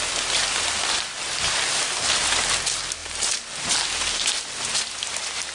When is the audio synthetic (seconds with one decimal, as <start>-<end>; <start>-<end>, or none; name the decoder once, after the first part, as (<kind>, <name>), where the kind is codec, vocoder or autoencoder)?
none